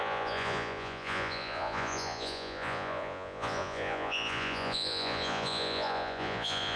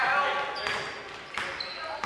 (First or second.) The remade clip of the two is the first